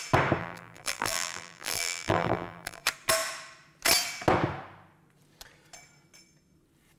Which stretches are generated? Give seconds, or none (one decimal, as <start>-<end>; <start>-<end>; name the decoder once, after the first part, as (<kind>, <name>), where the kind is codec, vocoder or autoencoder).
0.4-2.8 (vocoder, BigVGAN v2)